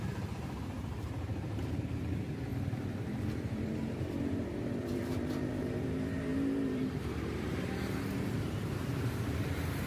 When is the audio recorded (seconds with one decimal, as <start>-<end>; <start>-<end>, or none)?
none